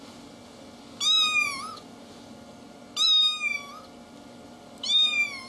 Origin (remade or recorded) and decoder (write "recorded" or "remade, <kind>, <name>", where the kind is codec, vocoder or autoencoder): recorded